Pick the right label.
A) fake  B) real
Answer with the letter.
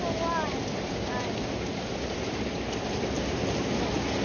B